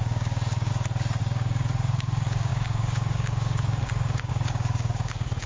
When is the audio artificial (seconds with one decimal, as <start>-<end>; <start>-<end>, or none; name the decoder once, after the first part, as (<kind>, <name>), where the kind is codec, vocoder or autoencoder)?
0.0-0.7 (codec, DAC); 1.2-5.5